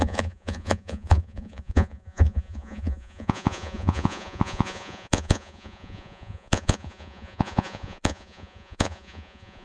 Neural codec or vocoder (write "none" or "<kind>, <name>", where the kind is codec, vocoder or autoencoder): vocoder, Vocos